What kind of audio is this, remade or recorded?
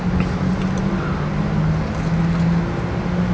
recorded